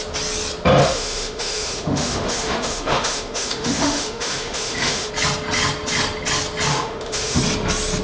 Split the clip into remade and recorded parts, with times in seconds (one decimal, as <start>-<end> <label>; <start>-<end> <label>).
0.0-0.8 recorded; 0.8-5.1 remade; 5.1-6.7 recorded; 6.7-7.4 remade; 7.4-8.0 recorded

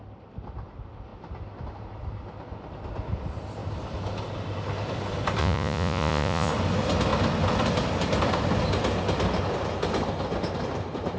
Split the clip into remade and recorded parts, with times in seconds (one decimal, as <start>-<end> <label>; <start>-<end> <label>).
0.0-5.4 recorded; 5.4-6.5 remade; 6.5-11.2 recorded

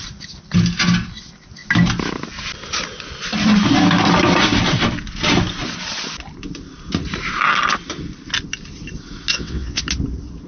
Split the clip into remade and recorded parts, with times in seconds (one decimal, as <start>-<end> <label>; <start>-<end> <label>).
0.0-9.3 recorded; 9.3-9.8 remade; 9.8-10.5 recorded

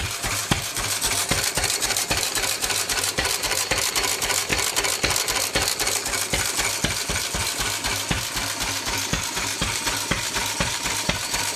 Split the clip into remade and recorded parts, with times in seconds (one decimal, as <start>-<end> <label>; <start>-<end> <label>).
0.0-4.5 remade; 4.5-9.2 recorded; 9.2-11.6 remade